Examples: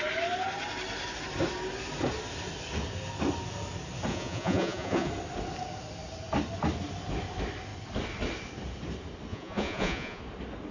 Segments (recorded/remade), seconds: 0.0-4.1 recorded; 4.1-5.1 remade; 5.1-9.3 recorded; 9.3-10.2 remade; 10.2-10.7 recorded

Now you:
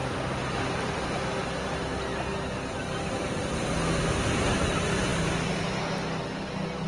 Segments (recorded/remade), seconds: 0.0-6.9 recorded